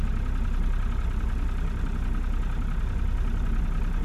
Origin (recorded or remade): recorded